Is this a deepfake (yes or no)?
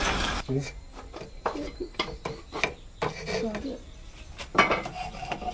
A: no